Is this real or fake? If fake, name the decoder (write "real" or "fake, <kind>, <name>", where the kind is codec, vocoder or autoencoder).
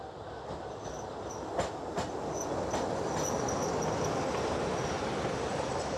real